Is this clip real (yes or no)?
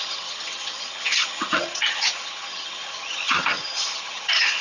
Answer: no